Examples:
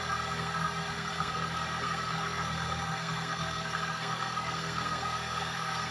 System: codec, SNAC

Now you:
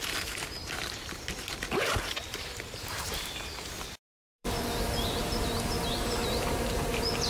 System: vocoder, BigVGAN v2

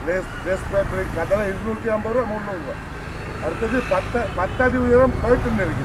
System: none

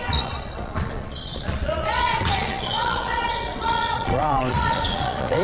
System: vocoder, Vocos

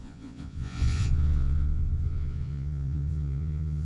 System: vocoder, Vocos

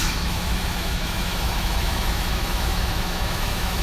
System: autoencoder, DAC-VAE